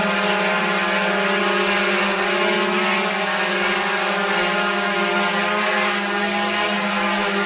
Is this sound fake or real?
real